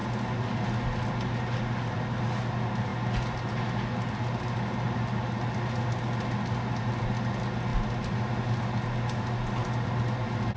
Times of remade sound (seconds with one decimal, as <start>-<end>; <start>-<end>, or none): none